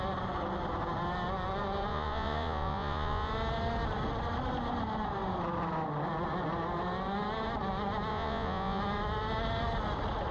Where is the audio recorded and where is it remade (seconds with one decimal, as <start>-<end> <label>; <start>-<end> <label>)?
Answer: 0.0-1.9 recorded; 1.9-3.3 remade; 3.3-8.1 recorded; 8.1-8.8 remade; 8.8-10.3 recorded

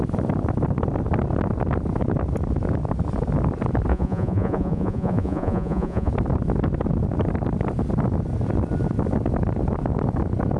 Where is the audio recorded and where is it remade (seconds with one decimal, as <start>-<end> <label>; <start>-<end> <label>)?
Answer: 0.0-3.9 recorded; 3.9-6.1 remade; 6.1-10.6 recorded

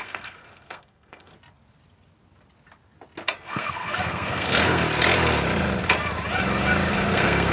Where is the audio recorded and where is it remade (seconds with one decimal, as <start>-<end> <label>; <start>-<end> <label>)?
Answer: 0.0-1.3 remade; 1.3-3.5 recorded; 3.5-4.8 remade; 4.8-6.9 recorded; 6.9-7.5 remade

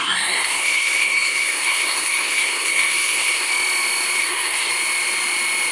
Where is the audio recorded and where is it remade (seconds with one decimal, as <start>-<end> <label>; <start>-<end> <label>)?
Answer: 0.0-3.5 remade; 3.5-4.2 recorded; 4.2-4.7 remade; 4.7-5.7 recorded